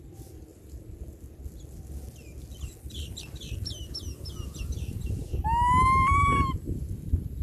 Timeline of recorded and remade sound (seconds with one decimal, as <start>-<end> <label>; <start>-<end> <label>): 0.0-7.4 recorded